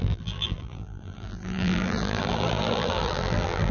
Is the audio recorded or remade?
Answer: remade